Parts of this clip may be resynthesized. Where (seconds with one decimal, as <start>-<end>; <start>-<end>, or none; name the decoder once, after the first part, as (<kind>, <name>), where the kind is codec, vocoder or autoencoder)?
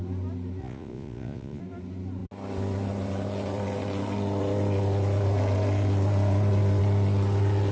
0.6-1.6 (vocoder, Vocos)